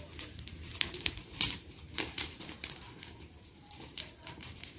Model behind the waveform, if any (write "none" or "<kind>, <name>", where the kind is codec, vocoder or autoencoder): vocoder, BigVGAN v2